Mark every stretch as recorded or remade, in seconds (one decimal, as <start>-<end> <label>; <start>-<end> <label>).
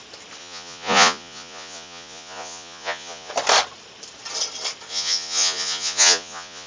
0.0-0.4 recorded; 0.4-3.3 remade; 3.3-4.9 recorded; 4.9-6.7 remade